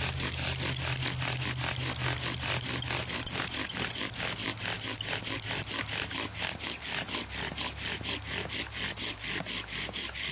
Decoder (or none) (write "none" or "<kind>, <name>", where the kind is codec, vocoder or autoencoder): none